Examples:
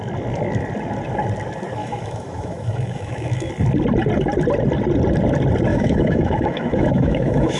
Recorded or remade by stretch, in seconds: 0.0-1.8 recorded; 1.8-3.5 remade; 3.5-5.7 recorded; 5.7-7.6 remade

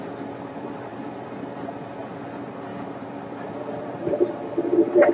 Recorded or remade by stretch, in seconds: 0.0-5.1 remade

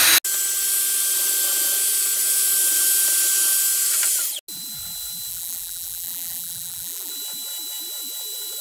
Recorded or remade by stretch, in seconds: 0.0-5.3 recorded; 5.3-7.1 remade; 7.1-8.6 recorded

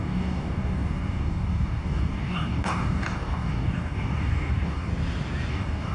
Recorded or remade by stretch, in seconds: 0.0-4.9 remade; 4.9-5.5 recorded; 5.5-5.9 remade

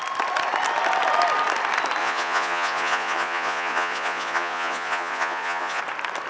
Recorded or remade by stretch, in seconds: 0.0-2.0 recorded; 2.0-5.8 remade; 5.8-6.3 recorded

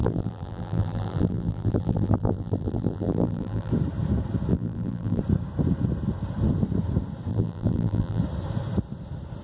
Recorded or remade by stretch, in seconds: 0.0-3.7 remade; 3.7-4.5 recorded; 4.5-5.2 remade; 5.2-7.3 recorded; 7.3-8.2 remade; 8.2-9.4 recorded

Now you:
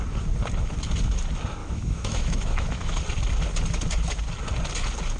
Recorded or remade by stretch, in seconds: 0.0-1.6 recorded; 1.6-3.0 remade; 3.0-5.2 recorded